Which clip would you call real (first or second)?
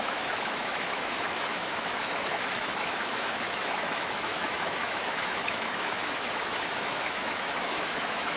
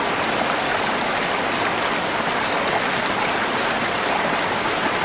second